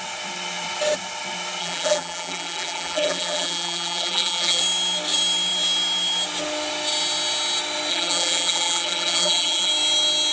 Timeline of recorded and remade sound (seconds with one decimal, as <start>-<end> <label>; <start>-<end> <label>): 0.0-1.6 recorded; 1.6-4.6 remade; 4.6-7.9 recorded; 7.9-9.7 remade; 9.7-10.3 recorded

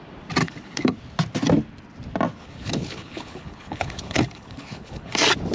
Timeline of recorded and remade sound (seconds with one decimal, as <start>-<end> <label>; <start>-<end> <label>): 0.0-0.4 recorded; 0.4-1.0 remade; 1.0-2.3 recorded; 2.3-5.1 remade; 5.1-5.5 recorded

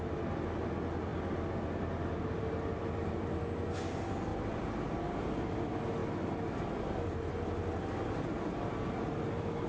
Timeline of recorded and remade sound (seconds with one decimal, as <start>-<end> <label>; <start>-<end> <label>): 0.0-4.3 recorded; 4.3-5.3 remade; 5.3-9.7 recorded

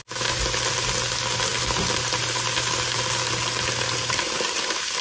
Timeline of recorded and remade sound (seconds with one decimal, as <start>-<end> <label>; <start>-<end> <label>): 0.0-5.0 recorded